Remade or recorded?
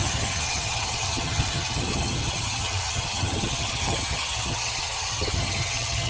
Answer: remade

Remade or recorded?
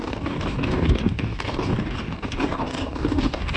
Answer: remade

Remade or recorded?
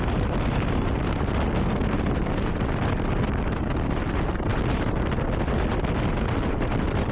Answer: recorded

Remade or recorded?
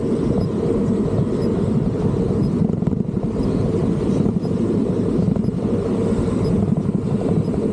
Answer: recorded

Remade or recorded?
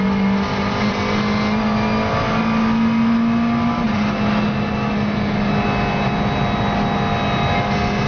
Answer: recorded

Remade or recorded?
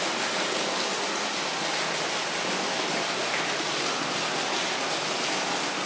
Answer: recorded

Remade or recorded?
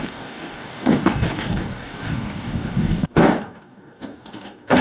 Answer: remade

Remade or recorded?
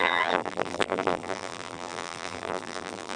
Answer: remade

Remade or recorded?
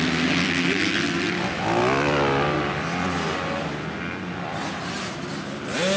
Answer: recorded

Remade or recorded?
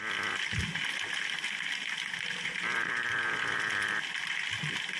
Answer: recorded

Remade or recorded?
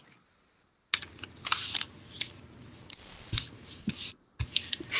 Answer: recorded